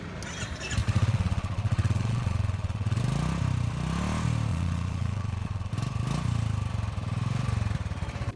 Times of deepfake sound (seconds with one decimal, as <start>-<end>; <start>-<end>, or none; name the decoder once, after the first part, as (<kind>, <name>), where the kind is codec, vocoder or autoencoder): 0.8-3.0 (vocoder, Vocos); 4.5-5.7